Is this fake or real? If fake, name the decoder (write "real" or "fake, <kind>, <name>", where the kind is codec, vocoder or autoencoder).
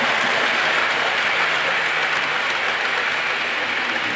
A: real